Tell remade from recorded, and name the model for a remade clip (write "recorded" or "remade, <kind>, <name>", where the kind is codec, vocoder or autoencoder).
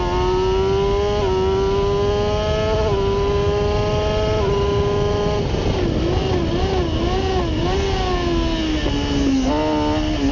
recorded